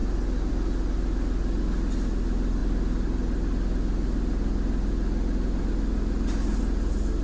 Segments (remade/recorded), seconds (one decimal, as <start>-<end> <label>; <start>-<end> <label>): 0.0-7.2 recorded

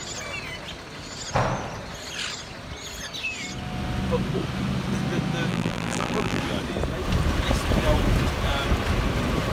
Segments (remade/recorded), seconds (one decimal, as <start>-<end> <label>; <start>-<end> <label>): 0.0-5.5 recorded; 5.5-6.4 remade; 6.4-9.5 recorded